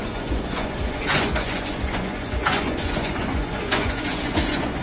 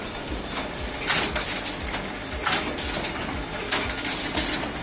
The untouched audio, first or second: second